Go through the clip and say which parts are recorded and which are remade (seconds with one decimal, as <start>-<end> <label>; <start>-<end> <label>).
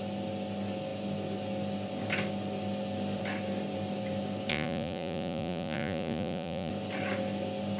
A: 0.0-4.5 recorded; 4.5-6.7 remade; 6.7-7.8 recorded